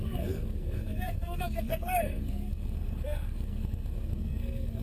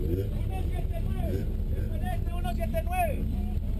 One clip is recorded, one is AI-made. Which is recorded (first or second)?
second